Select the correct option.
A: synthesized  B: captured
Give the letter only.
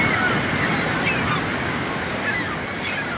B